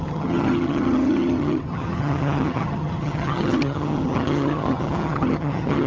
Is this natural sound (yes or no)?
no